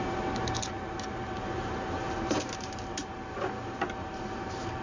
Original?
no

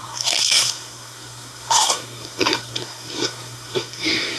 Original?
no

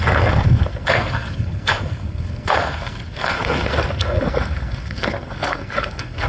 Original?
no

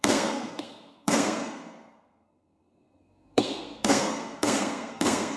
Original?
no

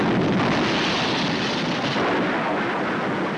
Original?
yes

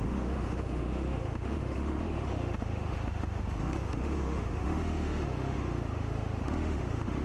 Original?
no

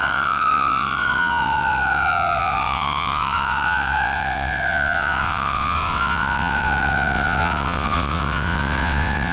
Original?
no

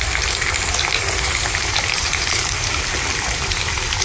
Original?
no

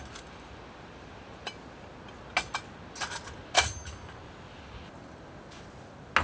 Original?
yes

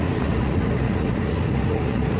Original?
no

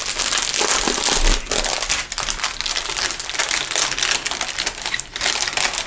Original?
yes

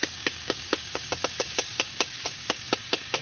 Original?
no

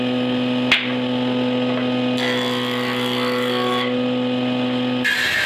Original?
yes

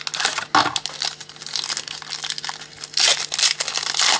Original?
yes